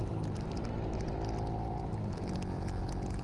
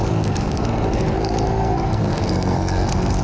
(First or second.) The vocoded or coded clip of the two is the second